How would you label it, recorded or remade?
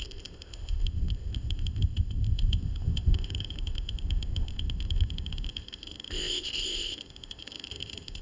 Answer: remade